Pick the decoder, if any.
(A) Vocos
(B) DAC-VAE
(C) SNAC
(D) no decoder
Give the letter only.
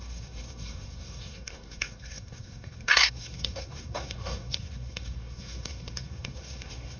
C